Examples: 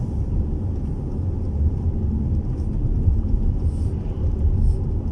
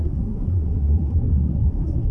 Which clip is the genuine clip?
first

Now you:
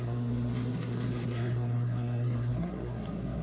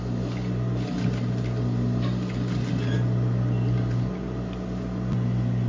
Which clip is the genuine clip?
second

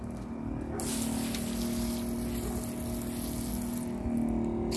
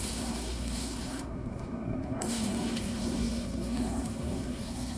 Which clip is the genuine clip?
first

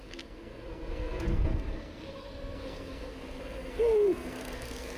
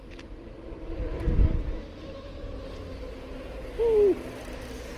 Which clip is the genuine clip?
second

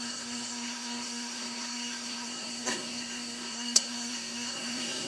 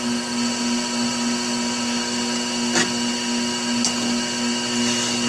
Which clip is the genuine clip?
second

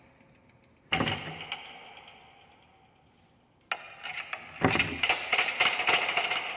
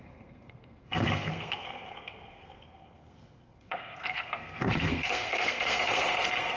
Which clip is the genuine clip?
first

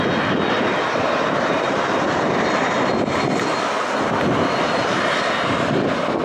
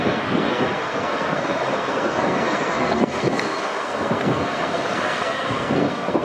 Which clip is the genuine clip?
first